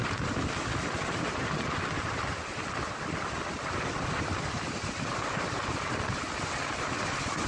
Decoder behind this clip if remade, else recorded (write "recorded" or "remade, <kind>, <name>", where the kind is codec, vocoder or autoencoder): recorded